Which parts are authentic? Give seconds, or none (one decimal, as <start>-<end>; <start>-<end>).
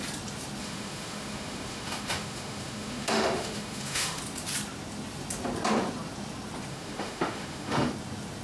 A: 0.0-0.6; 4.2-6.7; 7.9-8.4